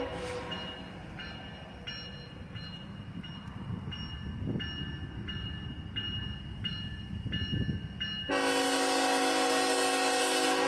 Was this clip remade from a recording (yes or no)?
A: no